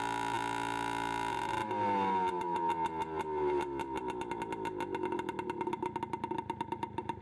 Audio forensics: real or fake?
real